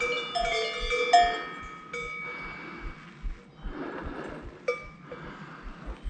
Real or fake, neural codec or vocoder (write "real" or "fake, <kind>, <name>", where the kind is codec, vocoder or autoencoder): real